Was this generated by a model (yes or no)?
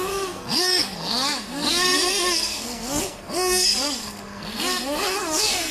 yes